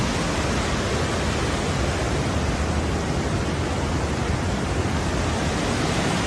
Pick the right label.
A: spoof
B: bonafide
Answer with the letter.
B